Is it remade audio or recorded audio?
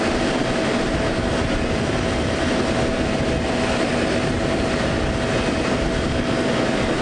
recorded